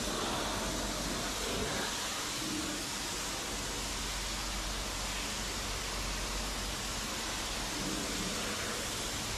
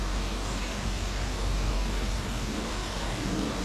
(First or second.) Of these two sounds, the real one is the first